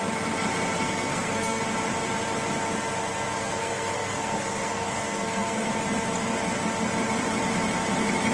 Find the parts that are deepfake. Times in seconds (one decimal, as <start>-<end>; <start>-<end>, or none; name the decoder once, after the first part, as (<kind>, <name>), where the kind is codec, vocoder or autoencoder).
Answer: 0.8-1.6 (codec, SNAC); 3.3-5.7